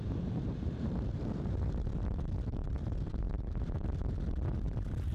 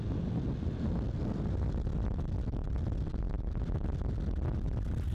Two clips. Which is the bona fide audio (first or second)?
second